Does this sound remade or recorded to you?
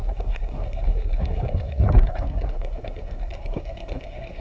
remade